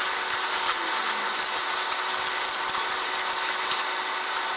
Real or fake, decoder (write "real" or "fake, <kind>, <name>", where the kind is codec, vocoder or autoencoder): real